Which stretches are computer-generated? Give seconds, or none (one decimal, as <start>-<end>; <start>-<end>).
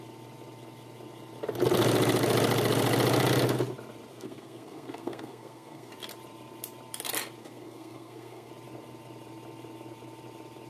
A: 4.1-5.9; 7.4-8.5